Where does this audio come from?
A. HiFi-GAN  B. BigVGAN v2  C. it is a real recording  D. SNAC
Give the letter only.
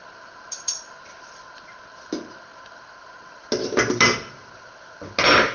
C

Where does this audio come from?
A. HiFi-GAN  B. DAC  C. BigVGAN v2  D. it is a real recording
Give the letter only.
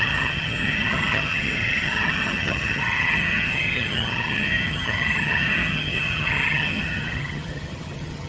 A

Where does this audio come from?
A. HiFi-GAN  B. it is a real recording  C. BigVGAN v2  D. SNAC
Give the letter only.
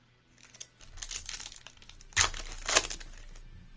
B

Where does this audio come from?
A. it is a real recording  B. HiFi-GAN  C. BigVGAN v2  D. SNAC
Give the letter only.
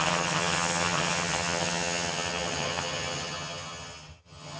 B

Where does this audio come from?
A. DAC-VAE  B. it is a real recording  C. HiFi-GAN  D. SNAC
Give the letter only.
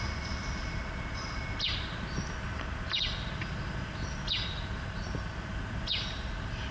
B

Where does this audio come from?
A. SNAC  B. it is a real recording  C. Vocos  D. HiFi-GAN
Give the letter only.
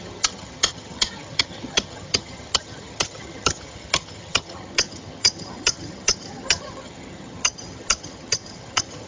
D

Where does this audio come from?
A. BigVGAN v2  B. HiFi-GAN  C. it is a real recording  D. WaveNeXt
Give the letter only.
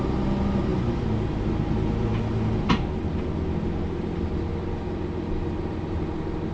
C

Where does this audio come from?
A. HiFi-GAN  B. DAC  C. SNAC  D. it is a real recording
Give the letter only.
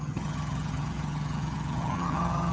A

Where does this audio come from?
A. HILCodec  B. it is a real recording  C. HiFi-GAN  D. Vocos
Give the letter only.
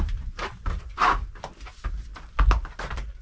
B